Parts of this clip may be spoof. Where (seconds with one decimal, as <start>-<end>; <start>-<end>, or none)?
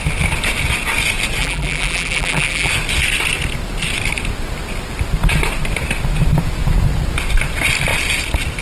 1.4-2.7